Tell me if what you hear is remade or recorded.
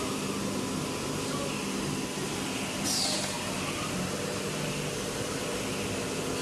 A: recorded